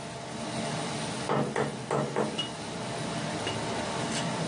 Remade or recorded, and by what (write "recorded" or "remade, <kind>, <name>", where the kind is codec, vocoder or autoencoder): recorded